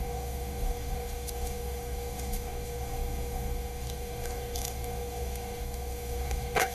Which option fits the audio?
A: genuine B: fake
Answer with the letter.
B